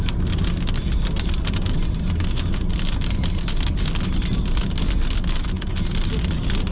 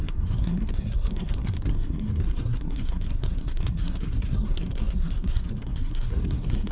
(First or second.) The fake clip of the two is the second